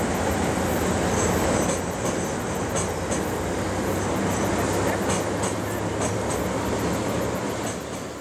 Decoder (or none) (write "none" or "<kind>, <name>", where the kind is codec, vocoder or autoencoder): none